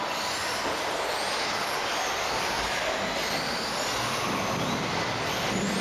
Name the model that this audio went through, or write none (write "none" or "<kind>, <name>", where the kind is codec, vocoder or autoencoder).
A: none